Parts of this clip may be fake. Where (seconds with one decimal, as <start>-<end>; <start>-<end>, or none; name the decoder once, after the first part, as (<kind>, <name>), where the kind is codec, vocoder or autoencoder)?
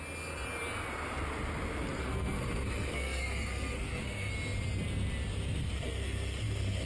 2.0-4.3 (codec, SNAC); 5.6-6.9